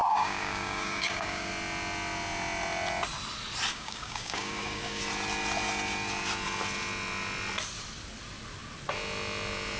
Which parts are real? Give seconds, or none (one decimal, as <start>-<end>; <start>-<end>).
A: 1.5-3.7; 5.0-9.8